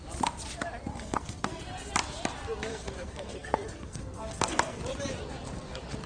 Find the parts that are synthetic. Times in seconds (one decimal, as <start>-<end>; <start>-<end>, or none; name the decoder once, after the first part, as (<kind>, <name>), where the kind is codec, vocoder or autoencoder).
0.9-1.6 (codec, SNAC); 2.7-4.8